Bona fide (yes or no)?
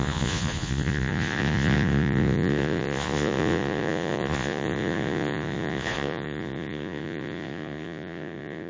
no